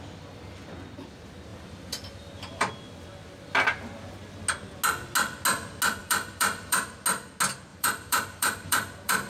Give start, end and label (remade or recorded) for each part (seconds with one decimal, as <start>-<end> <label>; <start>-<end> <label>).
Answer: 0.0-1.5 recorded; 1.5-2.7 remade; 2.7-6.0 recorded; 6.0-6.9 remade; 6.9-7.7 recorded; 7.7-9.3 remade